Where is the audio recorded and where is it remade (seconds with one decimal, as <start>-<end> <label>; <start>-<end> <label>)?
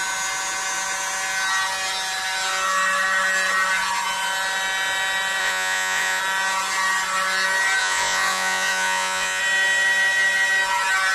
0.0-5.4 recorded; 5.4-6.2 remade; 6.2-7.8 recorded; 7.8-9.4 remade; 9.4-11.1 recorded